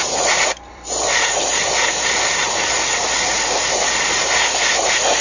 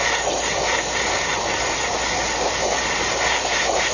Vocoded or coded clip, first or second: first